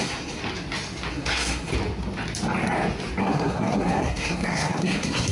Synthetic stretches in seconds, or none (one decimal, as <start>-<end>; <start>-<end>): 0.0-0.4; 1.1-1.7; 3.2-5.3